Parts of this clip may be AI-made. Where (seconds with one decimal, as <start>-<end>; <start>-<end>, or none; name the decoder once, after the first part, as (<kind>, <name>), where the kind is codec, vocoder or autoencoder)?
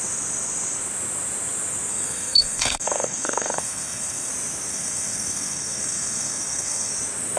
1.9-4.3 (codec, SNAC); 4.7-6.9